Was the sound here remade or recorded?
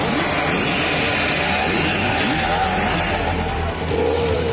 recorded